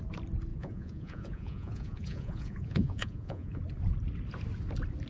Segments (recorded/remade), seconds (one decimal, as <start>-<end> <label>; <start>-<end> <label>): 0.0-0.5 recorded; 0.5-3.6 remade; 3.6-5.1 recorded